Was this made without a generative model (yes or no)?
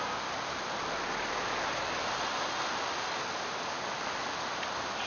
yes